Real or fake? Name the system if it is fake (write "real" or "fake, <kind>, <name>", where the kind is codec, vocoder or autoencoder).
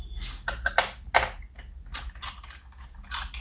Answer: real